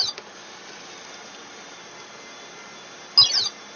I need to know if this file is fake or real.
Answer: real